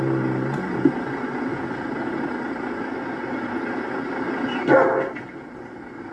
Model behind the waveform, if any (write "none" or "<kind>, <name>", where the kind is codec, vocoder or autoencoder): none